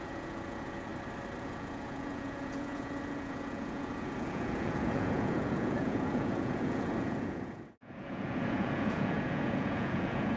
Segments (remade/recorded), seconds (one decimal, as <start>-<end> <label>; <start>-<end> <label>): 0.0-0.9 remade; 0.9-1.4 recorded; 1.4-10.4 remade